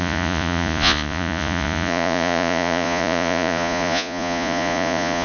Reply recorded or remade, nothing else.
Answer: remade